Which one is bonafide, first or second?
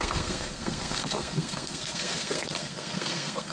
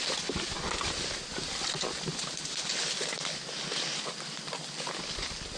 second